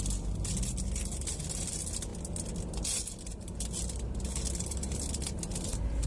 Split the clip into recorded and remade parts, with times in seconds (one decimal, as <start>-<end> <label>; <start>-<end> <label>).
0.0-6.1 recorded